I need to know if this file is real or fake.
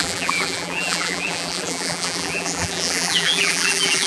fake